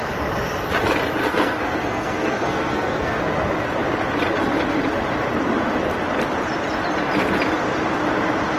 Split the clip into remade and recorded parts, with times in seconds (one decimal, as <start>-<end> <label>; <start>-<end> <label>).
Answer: 0.0-1.2 recorded; 1.2-3.2 remade; 3.2-8.6 recorded